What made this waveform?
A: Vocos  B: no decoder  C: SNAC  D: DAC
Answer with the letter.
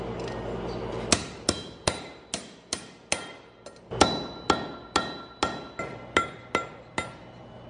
B